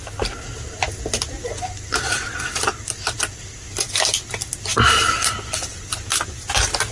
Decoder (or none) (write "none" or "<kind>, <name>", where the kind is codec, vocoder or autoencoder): none